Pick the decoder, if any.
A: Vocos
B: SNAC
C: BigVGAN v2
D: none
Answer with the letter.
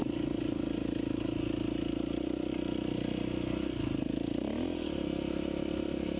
D